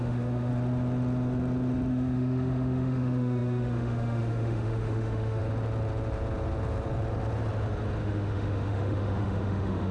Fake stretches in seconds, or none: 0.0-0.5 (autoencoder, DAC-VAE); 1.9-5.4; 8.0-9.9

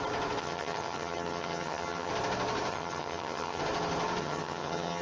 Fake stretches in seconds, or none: 0.4-2.1 (vocoder, HiFi-GAN); 2.7-3.6; 4.2-5.0

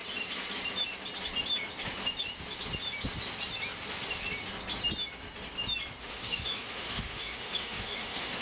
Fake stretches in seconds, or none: 6.0-8.4 (autoencoder, DAC-VAE)

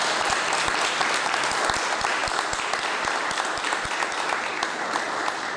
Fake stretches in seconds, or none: none

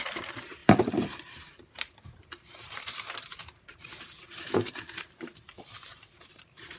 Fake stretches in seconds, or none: 0.0-5.3 (vocoder, BigVGAN v2); 6.2-6.8

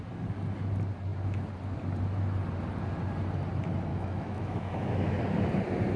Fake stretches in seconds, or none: 3.9-5.2 (autoencoder, DAC-VAE)

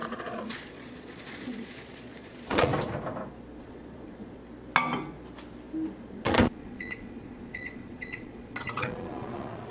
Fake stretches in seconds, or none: 0.0-2.7 (vocoder, Vocos); 3.6-4.4; 6.0-9.7

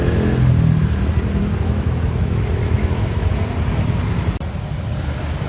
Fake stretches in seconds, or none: 1.4-3.3 (autoencoder, DAC-VAE)